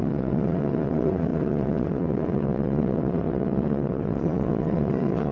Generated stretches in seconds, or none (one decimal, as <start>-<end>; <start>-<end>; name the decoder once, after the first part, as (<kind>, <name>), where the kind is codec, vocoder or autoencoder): 0.0-5.3 (vocoder, WaveNeXt)

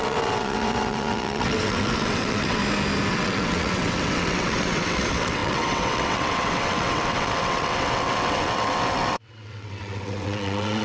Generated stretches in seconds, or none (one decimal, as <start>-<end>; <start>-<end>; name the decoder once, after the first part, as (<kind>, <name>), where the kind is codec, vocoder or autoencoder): 0.0-2.6 (vocoder, WaveNeXt); 3.1-10.8

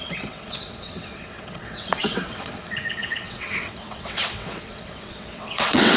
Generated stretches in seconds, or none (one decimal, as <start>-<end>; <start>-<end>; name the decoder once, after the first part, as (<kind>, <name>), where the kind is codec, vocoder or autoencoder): 0.0-6.0 (vocoder, WaveNeXt)

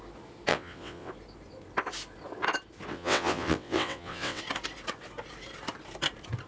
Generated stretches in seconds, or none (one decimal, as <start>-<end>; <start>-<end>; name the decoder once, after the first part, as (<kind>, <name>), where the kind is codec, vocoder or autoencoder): 0.5-1.1 (vocoder, WaveNeXt); 2.9-4.4

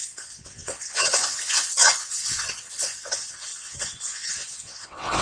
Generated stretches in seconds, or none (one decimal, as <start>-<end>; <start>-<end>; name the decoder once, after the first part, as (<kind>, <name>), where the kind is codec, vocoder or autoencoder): 0.0-5.2 (vocoder, WaveNeXt)

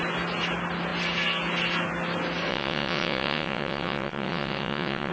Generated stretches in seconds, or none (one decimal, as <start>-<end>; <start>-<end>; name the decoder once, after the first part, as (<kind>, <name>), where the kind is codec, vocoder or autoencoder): 2.5-5.1 (vocoder, WaveNeXt)

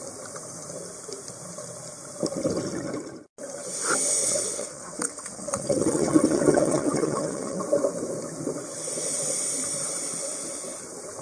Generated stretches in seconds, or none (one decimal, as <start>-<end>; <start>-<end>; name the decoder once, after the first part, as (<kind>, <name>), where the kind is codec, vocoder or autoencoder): 4.2-7.6 (vocoder, WaveNeXt)